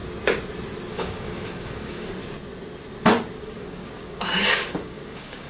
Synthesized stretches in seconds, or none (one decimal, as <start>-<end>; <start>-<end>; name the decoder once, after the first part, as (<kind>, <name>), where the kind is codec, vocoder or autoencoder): 0.9-2.2 (codec, DAC); 3.4-5.5